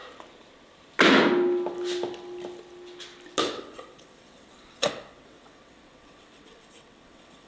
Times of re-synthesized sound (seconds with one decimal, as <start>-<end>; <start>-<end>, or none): 3.4-7.5